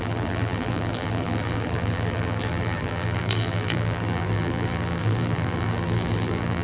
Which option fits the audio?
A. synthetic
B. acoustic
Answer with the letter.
A